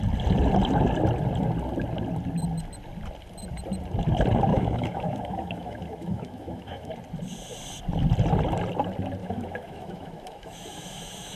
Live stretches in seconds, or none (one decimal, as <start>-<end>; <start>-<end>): 0.0-4.5; 6.9-9.2